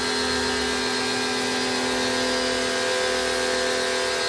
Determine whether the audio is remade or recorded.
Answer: recorded